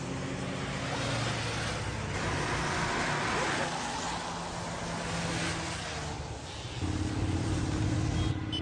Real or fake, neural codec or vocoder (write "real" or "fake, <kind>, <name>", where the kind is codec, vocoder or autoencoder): real